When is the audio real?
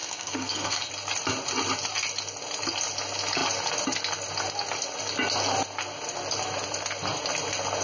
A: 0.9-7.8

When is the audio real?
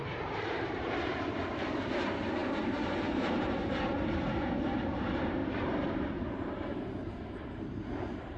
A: none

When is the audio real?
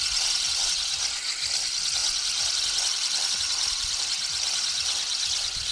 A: 0.0-5.7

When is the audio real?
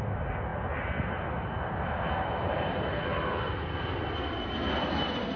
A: 0.0-5.4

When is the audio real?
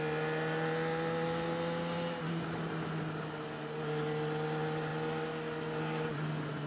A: 0.0-6.7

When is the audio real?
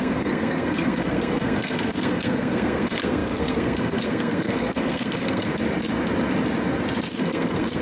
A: 5.5-7.1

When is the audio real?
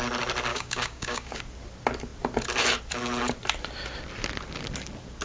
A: 0.0-0.5; 1.4-5.2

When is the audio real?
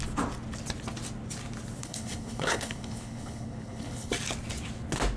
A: 0.0-1.8; 4.1-5.2